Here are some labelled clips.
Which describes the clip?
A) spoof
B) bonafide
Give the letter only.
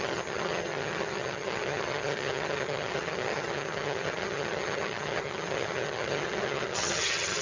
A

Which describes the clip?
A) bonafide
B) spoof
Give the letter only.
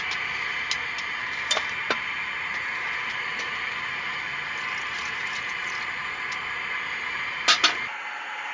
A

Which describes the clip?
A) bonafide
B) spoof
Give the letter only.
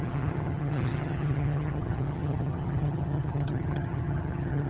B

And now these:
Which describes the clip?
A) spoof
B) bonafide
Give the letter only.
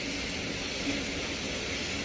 B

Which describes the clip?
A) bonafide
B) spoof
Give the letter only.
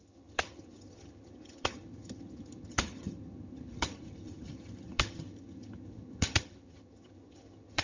B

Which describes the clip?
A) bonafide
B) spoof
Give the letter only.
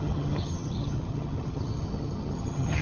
B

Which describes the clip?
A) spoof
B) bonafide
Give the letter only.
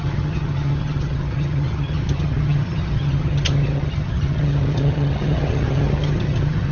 A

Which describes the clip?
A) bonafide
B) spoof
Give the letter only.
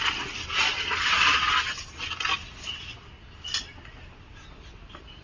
A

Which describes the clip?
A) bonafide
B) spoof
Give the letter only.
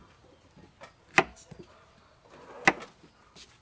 A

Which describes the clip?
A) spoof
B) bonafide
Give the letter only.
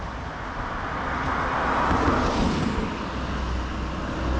B